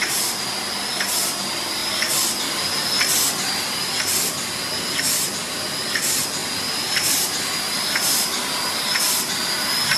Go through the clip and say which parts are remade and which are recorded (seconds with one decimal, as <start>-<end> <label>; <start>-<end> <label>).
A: 0.0-6.4 recorded; 6.4-9.0 remade; 9.0-10.0 recorded

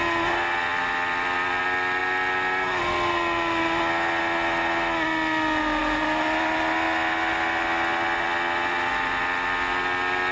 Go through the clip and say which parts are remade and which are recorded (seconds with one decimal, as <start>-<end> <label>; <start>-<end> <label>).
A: 0.0-0.7 recorded; 0.7-1.6 remade; 1.6-10.3 recorded

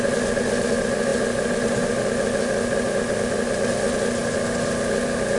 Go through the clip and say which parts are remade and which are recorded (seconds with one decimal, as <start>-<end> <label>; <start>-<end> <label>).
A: 0.0-5.4 recorded

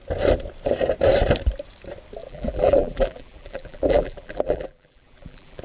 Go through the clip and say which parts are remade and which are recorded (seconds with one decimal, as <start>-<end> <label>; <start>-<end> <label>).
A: 0.0-2.2 recorded; 2.2-5.6 remade